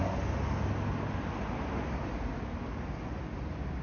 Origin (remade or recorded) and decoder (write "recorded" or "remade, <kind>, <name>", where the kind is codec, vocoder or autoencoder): recorded